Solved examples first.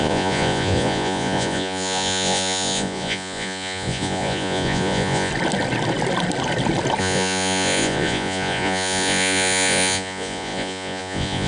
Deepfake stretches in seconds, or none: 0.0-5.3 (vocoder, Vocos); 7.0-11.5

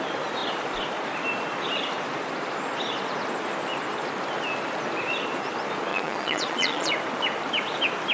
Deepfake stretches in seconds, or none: 5.9-6.9 (vocoder, Vocos)

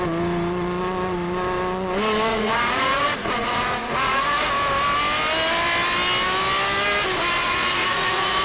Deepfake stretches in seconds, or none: 2.3-4.5 (vocoder, Vocos); 7.4-8.4

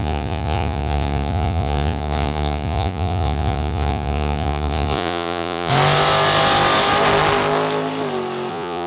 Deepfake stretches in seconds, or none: 0.0-5.7 (vocoder, Vocos); 8.5-8.9

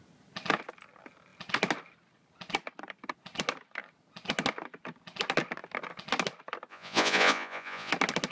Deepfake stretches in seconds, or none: 6.7-7.9 (vocoder, Vocos)

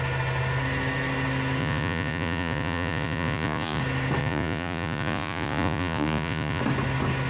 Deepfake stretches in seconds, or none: 1.6-3.8 (vocoder, Vocos); 4.2-6.6

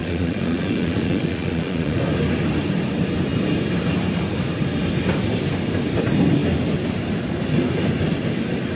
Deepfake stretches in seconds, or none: 0.0-2.0 (vocoder, Vocos)

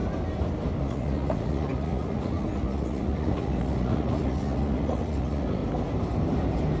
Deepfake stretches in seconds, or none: 0.8-5.6 (vocoder, Vocos)